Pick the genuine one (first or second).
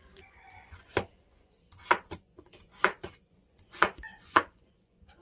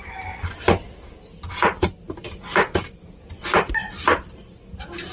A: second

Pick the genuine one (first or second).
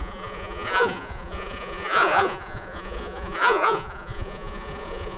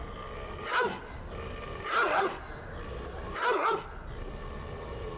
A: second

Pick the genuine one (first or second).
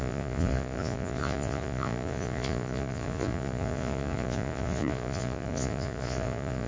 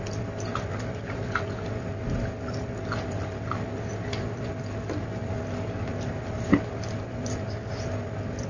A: second